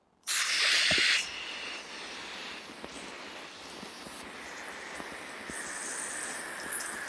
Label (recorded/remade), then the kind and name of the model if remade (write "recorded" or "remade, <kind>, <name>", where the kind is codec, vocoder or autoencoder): recorded